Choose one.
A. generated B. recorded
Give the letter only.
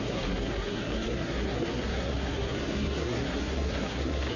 A